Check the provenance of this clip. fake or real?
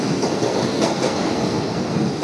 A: fake